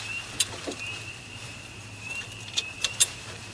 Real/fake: fake